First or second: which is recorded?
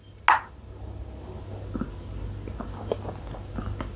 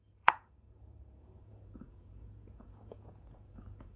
first